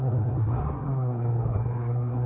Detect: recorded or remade remade